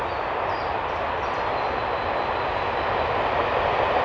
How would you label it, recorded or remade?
recorded